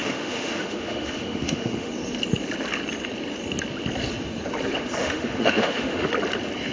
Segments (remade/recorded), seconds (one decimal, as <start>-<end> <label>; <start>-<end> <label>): 0.0-1.9 remade; 1.9-5.0 recorded; 5.0-6.1 remade; 6.1-6.7 recorded